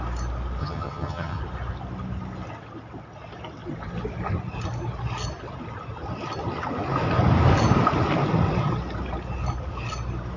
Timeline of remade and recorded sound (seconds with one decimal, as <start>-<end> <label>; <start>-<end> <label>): 0.0-0.6 recorded; 0.6-1.4 remade; 1.4-10.4 recorded